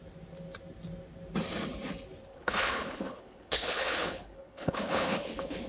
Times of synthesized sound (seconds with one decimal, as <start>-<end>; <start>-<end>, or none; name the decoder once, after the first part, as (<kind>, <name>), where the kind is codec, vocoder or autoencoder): 2.2-5.7 (codec, HILCodec)